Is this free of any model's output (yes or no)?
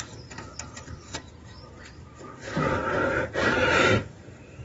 no